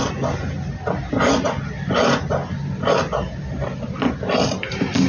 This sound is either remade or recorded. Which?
recorded